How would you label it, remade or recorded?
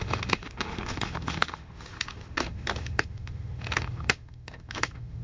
remade